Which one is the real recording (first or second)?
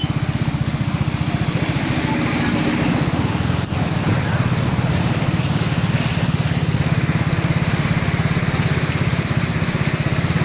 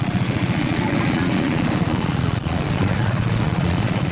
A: first